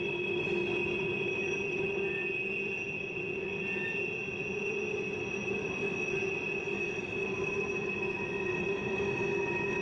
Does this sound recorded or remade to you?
recorded